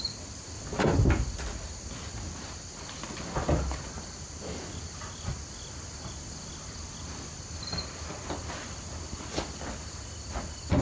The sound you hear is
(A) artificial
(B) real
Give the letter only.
B